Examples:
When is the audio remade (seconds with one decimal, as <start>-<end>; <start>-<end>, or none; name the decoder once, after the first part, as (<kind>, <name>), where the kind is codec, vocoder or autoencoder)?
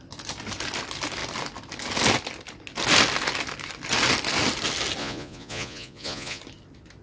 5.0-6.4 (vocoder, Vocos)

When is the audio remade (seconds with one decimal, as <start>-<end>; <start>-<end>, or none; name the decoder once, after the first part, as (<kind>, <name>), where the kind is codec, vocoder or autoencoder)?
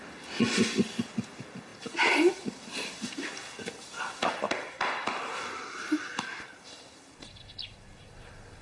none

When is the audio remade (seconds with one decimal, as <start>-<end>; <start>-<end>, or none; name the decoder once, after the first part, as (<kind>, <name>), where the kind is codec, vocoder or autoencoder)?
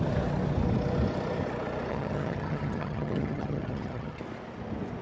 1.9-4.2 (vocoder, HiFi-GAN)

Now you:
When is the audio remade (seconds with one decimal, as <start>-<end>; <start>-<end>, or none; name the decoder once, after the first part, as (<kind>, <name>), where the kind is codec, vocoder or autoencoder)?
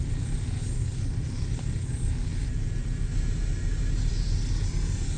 none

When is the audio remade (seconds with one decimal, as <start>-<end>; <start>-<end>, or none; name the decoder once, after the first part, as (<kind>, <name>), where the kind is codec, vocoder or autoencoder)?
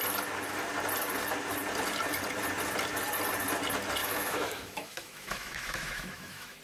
4.0-6.6 (autoencoder, DAC-VAE)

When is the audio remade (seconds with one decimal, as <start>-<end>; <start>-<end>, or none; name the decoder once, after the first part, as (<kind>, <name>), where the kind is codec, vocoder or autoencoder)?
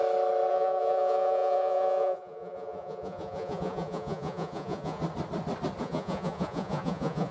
0.5-5.0 (vocoder, Vocos); 5.8-7.3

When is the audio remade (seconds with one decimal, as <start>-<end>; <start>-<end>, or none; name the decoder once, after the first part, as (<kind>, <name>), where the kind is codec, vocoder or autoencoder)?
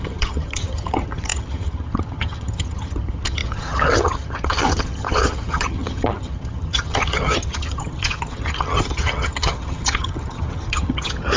0.0-11.4 (vocoder, HiFi-GAN)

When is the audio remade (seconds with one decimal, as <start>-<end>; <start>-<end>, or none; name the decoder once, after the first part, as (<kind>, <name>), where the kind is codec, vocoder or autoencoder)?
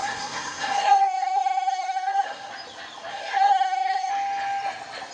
0.0-2.5 (codec, SNAC); 3.1-4.1